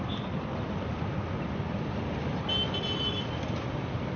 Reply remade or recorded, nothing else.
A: recorded